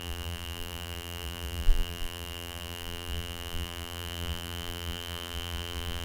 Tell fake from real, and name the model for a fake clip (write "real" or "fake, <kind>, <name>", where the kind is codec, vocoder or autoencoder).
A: fake, vocoder, BigVGAN v2